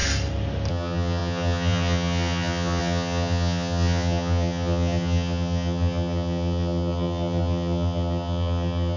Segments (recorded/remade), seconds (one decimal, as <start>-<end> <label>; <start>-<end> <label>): 0.0-0.7 recorded; 0.7-9.0 remade